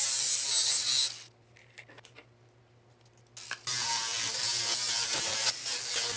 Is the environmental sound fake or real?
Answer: real